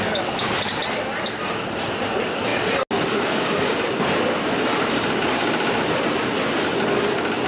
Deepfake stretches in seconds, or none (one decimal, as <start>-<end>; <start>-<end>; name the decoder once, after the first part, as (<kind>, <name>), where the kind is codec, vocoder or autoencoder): none